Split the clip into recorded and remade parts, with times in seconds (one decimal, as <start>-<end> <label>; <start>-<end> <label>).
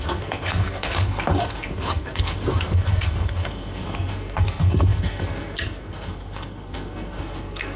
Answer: 0.0-7.8 remade